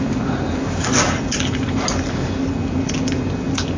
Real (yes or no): yes